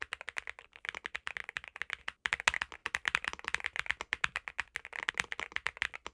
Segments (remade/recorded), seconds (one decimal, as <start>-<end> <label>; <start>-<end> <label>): 0.0-6.1 recorded